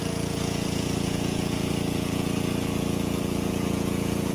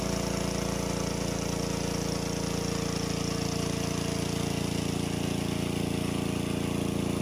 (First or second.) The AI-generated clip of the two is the first